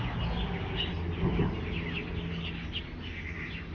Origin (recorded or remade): recorded